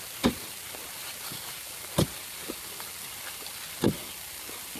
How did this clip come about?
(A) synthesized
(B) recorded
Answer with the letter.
B